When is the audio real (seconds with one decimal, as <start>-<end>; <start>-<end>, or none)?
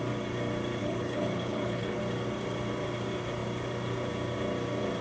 0.0-0.8; 2.0-5.0